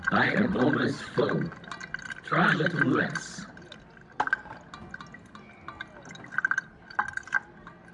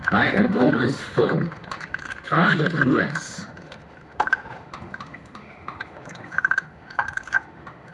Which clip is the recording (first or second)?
first